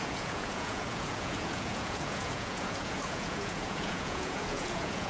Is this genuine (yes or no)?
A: no